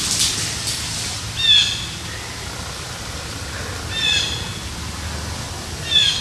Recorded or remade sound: recorded